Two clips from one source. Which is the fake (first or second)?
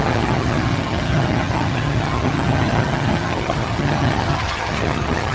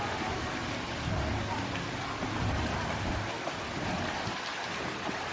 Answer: first